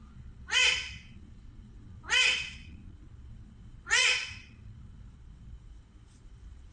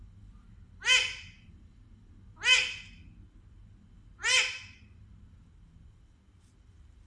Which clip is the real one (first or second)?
second